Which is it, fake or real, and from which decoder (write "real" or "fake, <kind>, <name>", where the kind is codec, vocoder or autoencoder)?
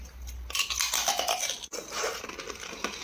real